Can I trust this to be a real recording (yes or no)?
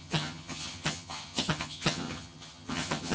no